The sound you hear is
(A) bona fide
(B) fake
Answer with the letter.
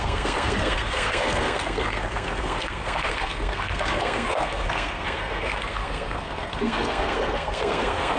B